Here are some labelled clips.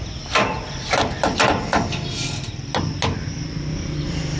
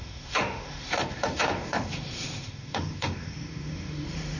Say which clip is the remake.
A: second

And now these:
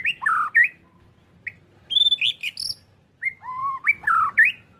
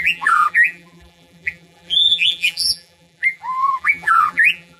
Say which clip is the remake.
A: second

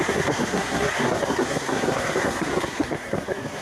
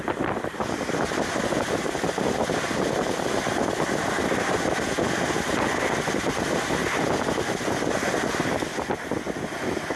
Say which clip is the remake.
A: first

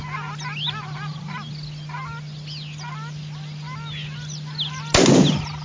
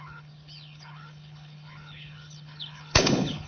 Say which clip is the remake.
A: second